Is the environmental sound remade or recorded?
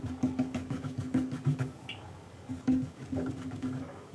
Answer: remade